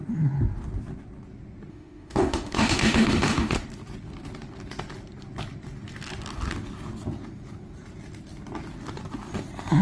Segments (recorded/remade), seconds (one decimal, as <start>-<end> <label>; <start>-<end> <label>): 0.0-1.7 recorded; 1.7-3.5 remade; 3.5-9.8 recorded